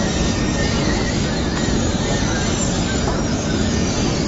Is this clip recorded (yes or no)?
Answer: yes